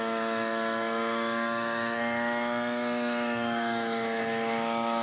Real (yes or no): no